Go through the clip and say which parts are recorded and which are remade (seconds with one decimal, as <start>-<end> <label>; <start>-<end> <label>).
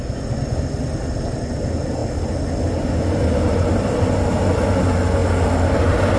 0.0-6.2 recorded